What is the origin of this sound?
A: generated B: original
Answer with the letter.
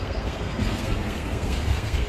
A